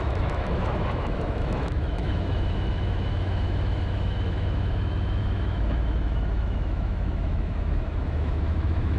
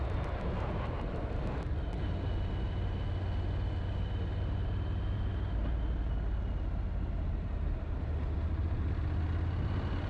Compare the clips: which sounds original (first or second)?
second